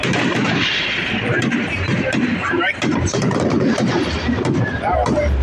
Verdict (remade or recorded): remade